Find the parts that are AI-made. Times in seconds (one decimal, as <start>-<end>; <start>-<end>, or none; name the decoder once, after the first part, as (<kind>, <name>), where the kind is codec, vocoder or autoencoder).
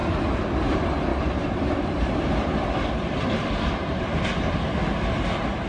1.1-4.2 (vocoder, BigVGAN v2)